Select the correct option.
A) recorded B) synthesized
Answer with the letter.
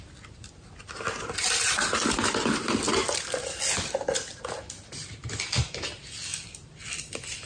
A